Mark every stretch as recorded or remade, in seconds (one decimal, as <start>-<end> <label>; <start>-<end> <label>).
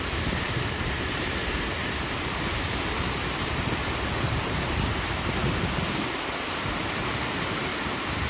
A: 0.0-7.7 remade; 7.7-8.3 recorded